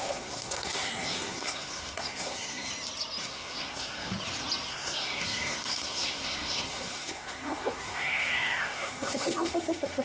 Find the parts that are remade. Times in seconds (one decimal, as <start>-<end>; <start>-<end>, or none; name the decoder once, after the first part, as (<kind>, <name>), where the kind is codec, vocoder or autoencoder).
0.0-2.7 (codec, SNAC); 3.2-4.1; 4.7-10.0